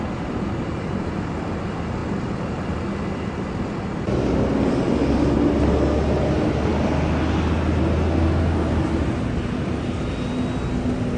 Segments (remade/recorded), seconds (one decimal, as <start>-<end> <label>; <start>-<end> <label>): 0.0-11.2 recorded